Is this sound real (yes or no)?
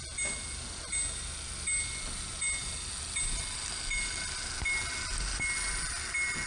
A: yes